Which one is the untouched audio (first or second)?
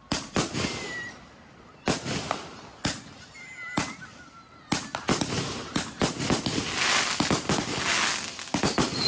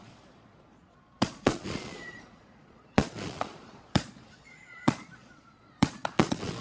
first